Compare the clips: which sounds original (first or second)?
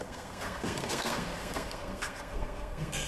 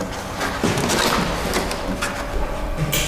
second